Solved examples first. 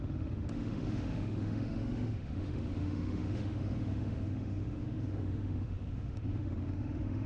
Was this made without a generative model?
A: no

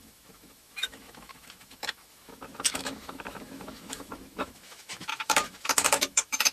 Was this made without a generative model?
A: no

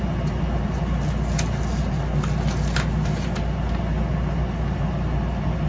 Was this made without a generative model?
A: yes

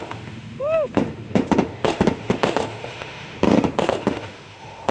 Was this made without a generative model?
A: no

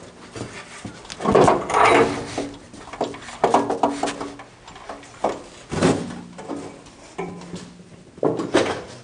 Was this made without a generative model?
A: yes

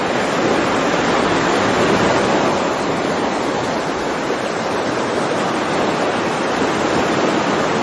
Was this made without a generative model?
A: yes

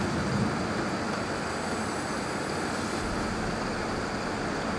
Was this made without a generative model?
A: yes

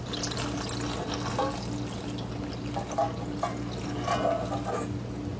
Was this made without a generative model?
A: yes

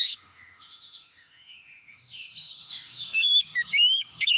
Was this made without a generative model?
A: no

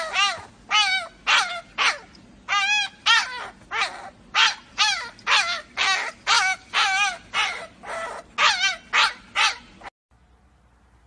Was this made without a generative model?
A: yes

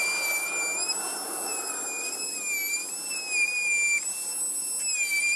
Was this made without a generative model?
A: yes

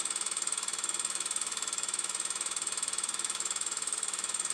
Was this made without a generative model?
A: no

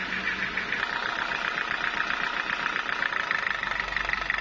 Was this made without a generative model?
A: yes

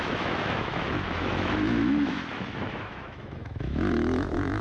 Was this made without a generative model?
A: no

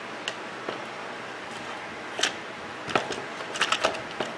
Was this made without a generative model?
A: yes